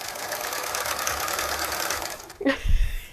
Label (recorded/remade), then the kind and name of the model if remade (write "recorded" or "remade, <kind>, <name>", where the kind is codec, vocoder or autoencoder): remade, codec, DAC